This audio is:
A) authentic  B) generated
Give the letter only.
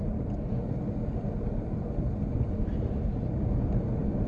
A